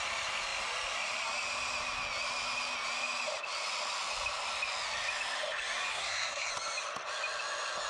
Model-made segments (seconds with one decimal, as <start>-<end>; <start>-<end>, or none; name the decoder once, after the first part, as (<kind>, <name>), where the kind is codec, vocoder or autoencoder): 5.9-6.5 (codec, SNAC)